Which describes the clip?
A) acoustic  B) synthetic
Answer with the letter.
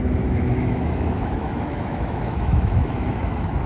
B